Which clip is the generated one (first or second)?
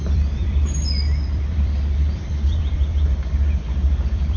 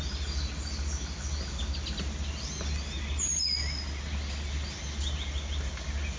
first